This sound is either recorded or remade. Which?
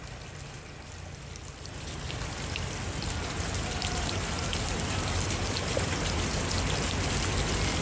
recorded